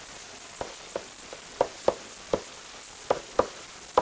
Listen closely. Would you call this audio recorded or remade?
recorded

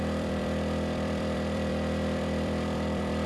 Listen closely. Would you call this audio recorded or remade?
remade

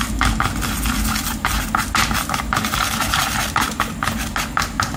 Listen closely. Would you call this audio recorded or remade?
recorded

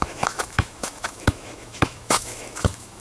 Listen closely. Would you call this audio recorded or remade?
remade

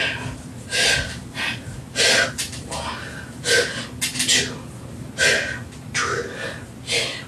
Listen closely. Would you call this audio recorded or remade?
recorded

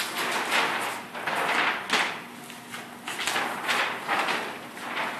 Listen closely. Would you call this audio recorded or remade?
recorded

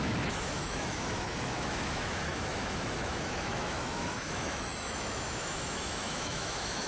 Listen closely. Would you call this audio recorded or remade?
remade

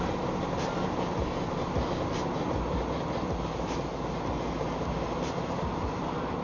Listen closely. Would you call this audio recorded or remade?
recorded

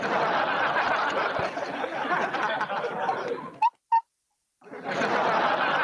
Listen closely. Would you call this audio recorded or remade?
recorded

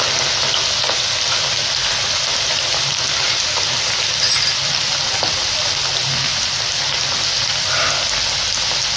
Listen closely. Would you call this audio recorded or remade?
recorded